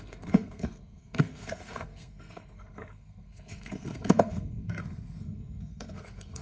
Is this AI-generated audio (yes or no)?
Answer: yes